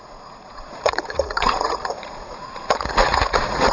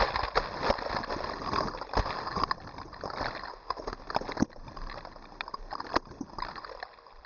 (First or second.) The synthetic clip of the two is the first